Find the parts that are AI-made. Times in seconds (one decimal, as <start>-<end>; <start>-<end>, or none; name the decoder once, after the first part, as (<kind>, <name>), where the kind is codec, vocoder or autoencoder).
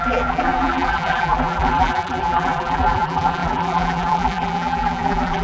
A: 0.0-5.4 (vocoder, BigVGAN v2)